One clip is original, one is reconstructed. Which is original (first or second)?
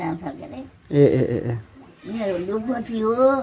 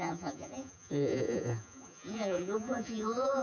first